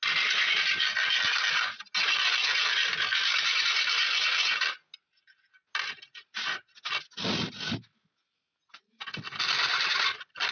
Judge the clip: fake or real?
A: real